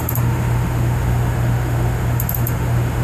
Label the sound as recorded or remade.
remade